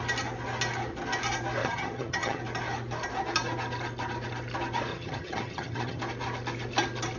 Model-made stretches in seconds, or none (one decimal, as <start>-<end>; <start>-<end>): 1.6-2.4; 4.9-6.0